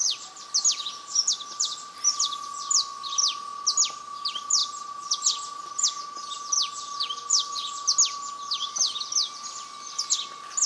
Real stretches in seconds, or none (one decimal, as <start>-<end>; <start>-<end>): 0.0-10.7